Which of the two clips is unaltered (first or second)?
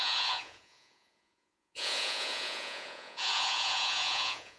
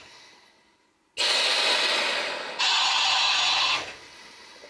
second